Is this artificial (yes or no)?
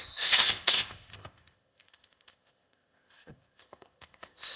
yes